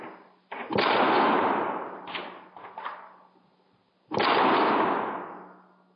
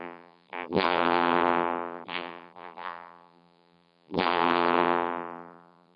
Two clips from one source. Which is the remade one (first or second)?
second